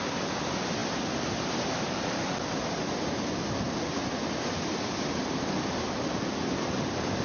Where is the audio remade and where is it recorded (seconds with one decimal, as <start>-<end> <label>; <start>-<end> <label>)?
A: 0.0-7.2 recorded